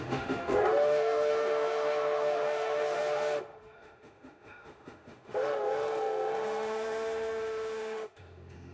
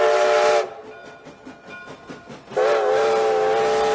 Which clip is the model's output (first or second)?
first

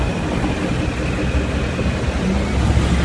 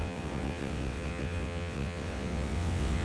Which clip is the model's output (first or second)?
second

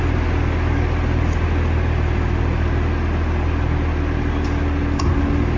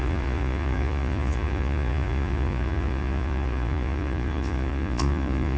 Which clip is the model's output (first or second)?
second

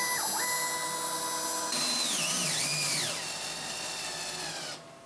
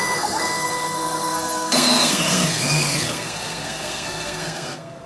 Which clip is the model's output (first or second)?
second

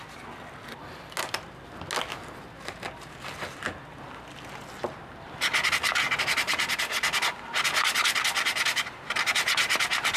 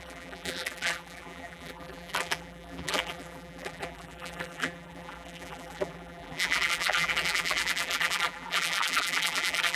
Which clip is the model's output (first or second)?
second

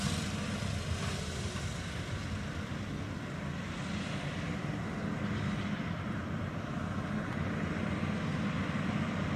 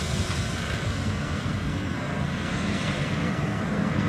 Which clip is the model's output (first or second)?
second